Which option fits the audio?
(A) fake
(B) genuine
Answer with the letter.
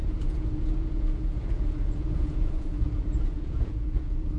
A